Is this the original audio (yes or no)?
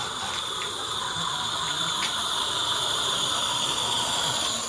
yes